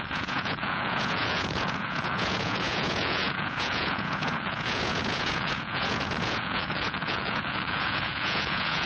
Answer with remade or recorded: remade